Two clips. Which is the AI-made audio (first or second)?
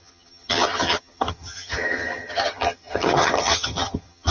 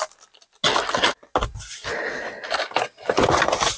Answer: first